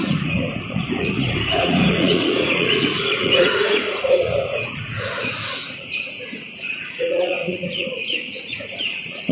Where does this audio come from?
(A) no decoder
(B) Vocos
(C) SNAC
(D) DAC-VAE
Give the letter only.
B